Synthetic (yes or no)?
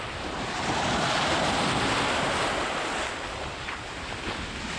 no